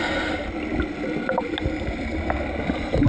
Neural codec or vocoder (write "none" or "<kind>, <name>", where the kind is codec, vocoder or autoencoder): none